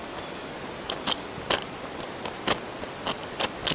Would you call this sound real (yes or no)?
yes